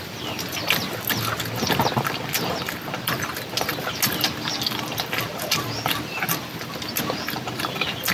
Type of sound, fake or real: real